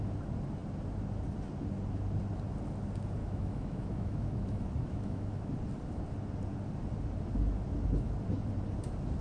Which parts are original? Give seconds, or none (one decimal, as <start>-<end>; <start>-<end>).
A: 0.0-3.2; 5.5-9.2